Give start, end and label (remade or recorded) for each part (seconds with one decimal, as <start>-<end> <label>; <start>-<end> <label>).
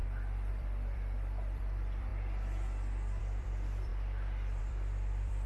0.0-0.5 recorded; 0.5-2.1 remade; 2.1-3.2 recorded; 3.2-3.9 remade; 3.9-4.6 recorded; 4.6-5.5 remade